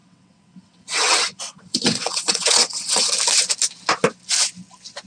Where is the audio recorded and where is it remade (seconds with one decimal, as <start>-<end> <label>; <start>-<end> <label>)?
0.0-3.1 remade; 3.1-5.1 recorded